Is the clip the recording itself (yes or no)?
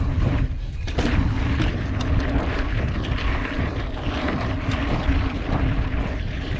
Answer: yes